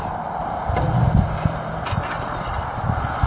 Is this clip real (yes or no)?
yes